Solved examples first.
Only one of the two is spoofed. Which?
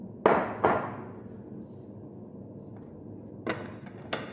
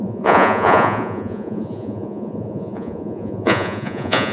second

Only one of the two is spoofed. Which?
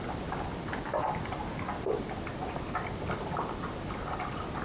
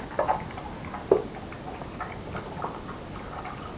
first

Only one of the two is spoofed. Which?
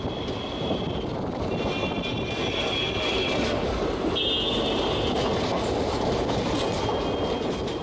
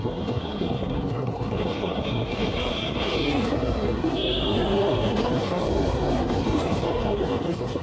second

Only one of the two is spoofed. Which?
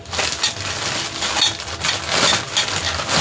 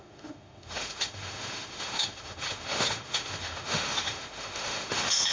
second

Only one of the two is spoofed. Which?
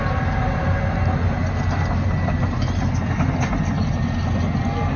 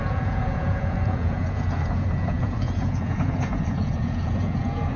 second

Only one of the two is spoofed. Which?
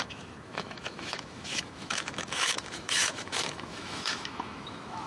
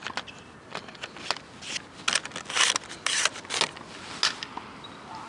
first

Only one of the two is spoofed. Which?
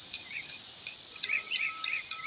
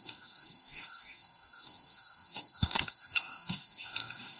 second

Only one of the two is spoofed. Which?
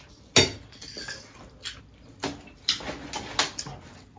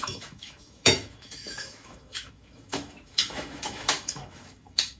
second